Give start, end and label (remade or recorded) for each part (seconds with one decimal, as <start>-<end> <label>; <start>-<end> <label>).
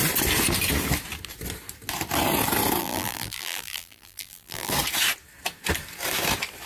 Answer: 0.0-2.8 recorded; 2.8-4.7 remade; 4.7-6.7 recorded